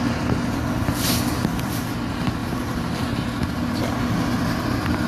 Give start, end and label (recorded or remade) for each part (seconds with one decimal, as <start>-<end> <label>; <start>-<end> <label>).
0.0-5.1 recorded